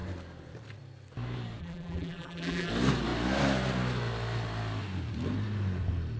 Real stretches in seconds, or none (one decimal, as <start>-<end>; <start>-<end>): 0.0-1.6; 2.7-6.2